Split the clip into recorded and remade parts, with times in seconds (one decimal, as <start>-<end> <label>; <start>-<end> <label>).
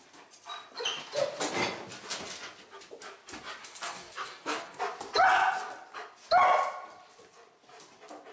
0.0-3.6 recorded; 3.6-4.8 remade; 4.8-8.3 recorded